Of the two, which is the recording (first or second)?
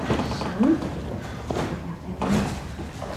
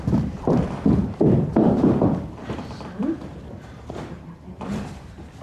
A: first